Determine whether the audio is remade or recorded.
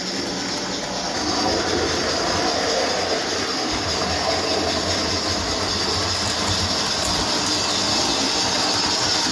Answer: recorded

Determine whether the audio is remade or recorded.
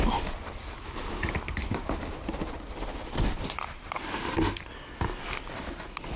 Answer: recorded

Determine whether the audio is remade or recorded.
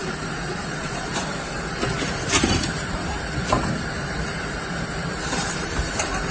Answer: remade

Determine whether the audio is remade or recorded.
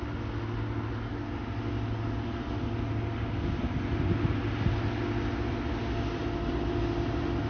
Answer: recorded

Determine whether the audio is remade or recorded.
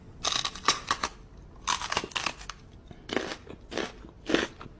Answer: recorded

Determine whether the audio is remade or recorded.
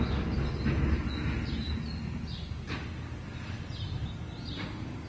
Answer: recorded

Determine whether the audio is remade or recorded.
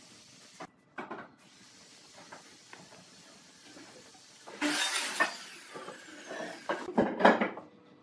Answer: recorded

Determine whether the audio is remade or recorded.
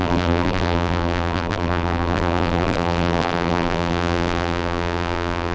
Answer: remade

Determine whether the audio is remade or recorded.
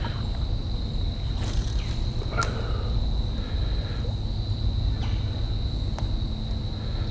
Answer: recorded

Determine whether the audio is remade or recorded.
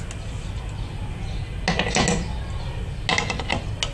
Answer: recorded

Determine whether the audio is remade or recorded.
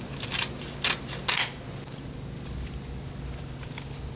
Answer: recorded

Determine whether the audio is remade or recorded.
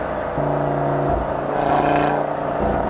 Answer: recorded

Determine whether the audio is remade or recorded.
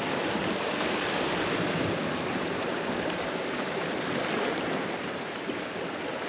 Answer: recorded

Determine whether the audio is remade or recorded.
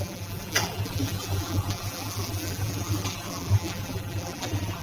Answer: remade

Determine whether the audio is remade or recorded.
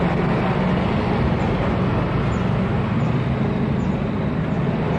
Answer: recorded